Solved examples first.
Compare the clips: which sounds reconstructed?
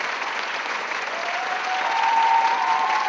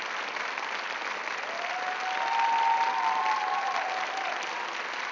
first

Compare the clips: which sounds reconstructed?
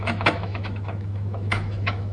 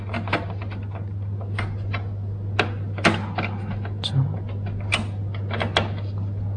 first